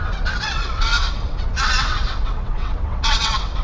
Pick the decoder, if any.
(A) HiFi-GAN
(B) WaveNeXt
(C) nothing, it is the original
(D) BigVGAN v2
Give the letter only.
B